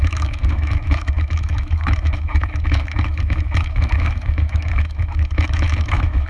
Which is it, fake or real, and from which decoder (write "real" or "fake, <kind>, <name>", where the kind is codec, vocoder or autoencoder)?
fake, autoencoder, DAC-VAE